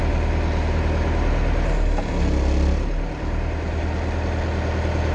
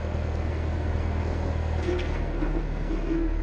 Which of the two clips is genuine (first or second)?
first